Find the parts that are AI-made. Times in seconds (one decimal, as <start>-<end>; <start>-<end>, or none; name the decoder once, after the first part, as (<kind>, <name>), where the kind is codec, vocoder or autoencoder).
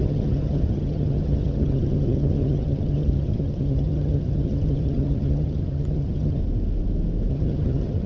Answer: 0.0-6.4 (vocoder, HiFi-GAN); 7.3-8.1